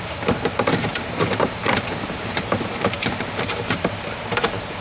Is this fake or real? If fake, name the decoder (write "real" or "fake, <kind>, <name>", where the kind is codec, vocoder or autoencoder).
fake, vocoder, BigVGAN v2